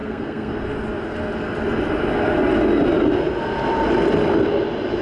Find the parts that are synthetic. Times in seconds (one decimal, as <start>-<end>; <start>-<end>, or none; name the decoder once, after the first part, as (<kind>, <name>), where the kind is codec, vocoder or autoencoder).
0.0-0.5 (codec, SNAC)